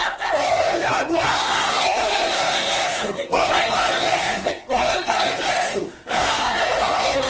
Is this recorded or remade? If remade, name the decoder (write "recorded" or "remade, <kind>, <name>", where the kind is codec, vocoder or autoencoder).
remade, codec, SNAC